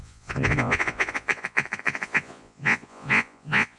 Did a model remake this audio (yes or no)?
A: yes